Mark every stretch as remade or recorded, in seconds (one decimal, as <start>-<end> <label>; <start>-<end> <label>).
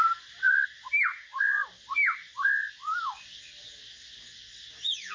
0.0-5.1 recorded